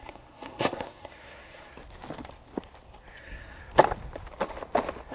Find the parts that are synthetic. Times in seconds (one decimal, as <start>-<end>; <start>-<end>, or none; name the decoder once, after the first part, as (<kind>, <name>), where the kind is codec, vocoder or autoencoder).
0.0-1.7 (codec, SNAC); 3.2-3.6